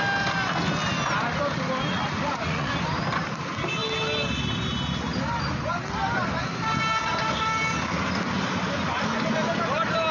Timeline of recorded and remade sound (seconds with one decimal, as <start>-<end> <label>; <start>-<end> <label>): 0.0-1.9 recorded; 1.9-2.8 remade; 2.8-10.1 recorded

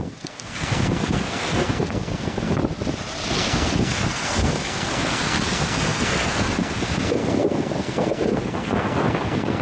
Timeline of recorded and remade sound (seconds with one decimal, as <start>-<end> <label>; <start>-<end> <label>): 0.0-2.6 remade; 2.6-3.3 recorded; 3.3-9.6 remade